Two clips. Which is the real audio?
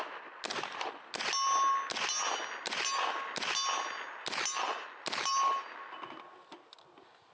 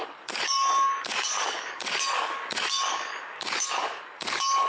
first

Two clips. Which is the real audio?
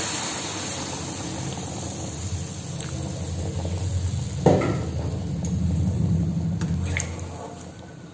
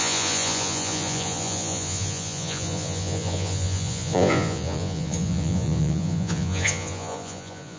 first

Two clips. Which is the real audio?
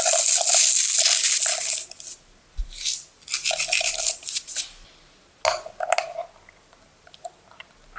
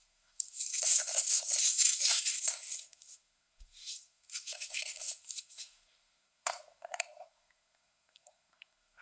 first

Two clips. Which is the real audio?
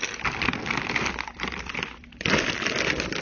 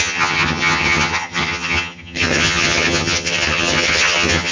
first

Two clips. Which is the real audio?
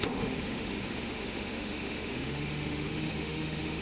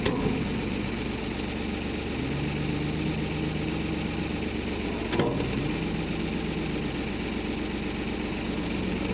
second